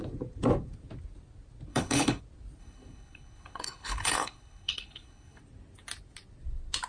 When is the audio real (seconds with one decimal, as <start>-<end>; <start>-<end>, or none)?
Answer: 0.0-1.7; 2.2-2.6; 5.4-6.9